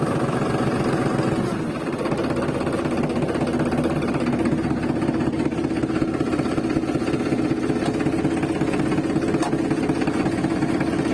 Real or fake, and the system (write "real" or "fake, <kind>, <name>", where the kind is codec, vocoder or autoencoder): real